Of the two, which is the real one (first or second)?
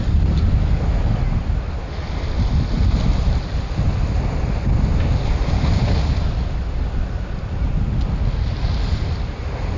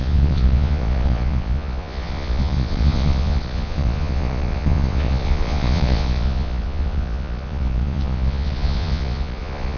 first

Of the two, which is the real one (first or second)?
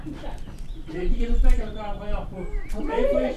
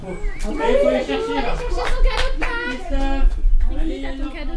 second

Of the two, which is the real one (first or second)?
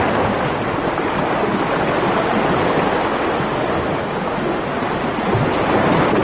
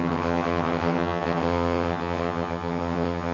first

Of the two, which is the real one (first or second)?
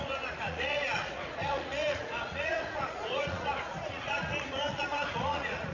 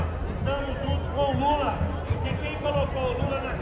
second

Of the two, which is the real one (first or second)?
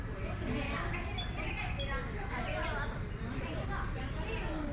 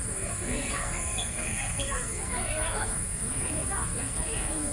first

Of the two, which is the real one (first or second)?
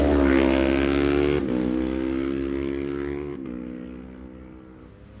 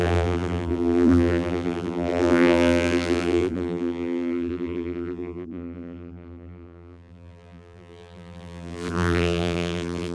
first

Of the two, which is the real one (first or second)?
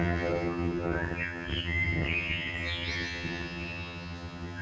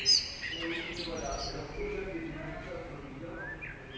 second